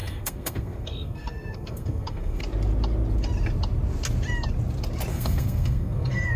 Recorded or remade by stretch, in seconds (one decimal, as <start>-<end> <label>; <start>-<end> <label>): 0.0-2.4 remade; 2.4-5.1 recorded; 5.1-6.4 remade